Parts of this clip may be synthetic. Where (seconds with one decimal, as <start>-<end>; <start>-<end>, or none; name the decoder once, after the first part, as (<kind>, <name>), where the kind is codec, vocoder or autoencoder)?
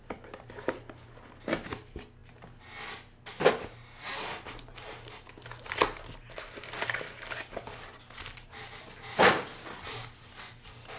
none